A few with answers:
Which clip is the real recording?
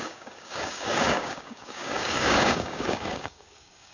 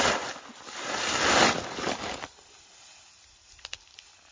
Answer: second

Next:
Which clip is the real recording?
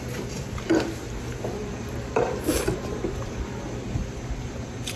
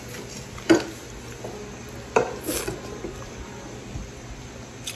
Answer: second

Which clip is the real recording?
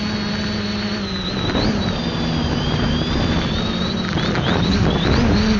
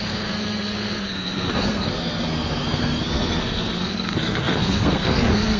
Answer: first